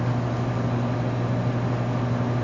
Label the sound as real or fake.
real